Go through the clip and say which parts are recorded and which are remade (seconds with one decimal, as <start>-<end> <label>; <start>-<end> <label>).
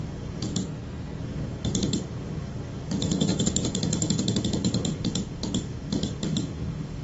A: 0.0-0.5 remade; 0.5-1.2 recorded; 1.2-7.0 remade